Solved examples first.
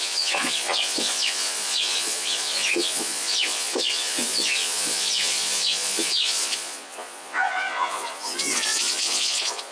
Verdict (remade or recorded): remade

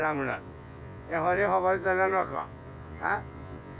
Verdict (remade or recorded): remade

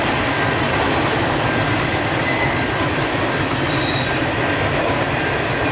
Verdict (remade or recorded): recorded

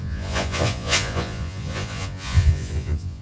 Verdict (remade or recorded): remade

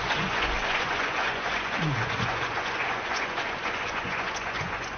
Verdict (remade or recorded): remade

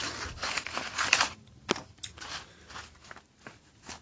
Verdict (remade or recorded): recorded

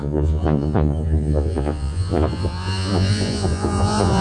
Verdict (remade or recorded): remade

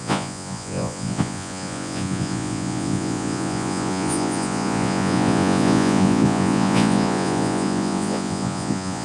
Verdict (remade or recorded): remade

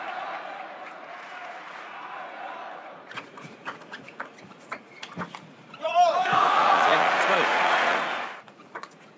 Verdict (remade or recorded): remade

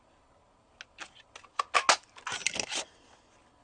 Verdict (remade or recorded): recorded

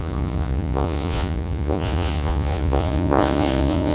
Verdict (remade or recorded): remade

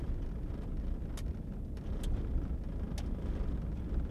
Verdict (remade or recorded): recorded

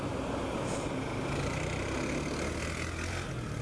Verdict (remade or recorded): recorded